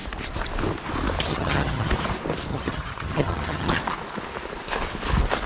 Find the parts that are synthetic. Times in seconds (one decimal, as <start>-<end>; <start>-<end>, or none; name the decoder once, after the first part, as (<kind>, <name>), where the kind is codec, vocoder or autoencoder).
1.3-1.9 (vocoder, HiFi-GAN); 2.5-3.8